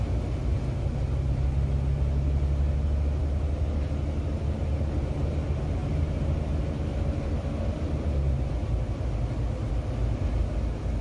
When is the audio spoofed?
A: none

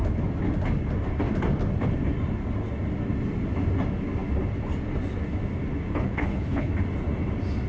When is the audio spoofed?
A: 5.9-6.7 (codec, HILCodec)